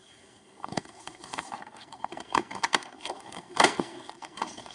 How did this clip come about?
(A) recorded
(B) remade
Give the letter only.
B